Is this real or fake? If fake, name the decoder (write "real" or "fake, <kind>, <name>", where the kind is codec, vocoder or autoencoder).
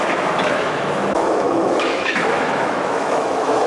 fake, autoencoder, DAC-VAE